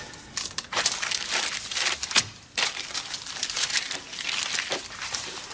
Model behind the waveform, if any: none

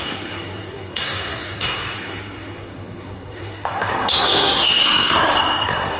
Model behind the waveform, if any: codec, SNAC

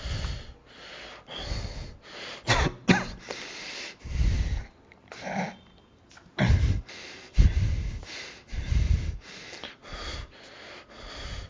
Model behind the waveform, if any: none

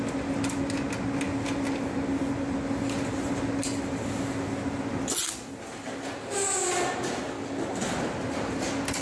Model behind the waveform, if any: none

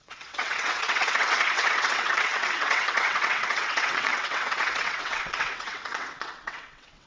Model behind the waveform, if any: vocoder, WaveNeXt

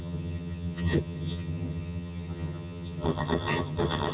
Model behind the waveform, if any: vocoder, HiFi-GAN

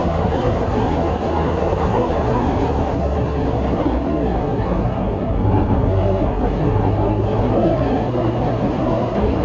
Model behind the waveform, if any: codec, SNAC